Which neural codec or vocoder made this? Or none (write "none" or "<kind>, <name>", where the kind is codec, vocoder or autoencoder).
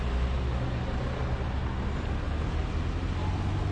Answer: none